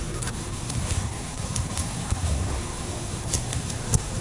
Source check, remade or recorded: remade